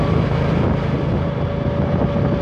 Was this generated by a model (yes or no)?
no